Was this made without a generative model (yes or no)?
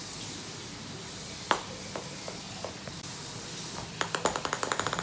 yes